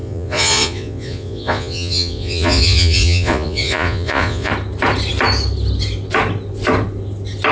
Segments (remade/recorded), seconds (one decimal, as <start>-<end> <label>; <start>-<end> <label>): 0.0-4.5 remade; 4.5-7.5 recorded